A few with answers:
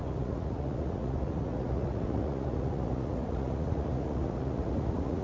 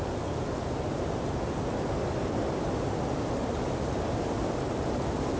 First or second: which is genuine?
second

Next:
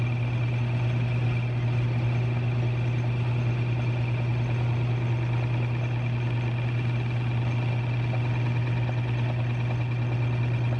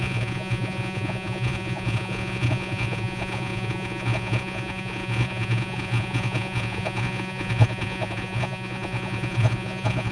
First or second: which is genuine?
first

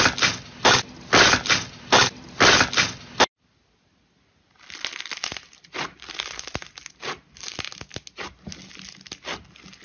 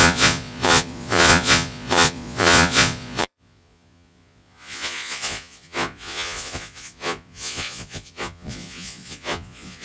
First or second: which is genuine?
first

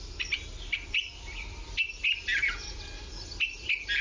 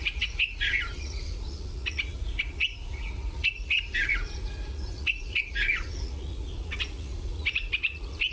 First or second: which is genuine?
first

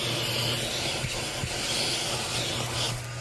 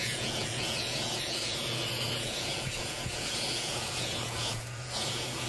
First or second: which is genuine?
first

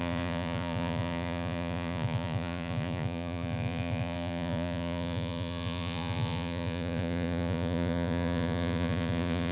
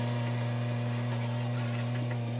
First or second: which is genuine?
second